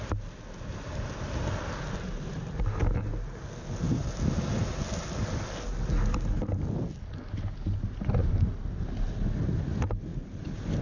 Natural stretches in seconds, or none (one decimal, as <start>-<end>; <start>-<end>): 0.0-10.8